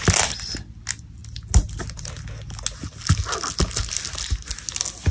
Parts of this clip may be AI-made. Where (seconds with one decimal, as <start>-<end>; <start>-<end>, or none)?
none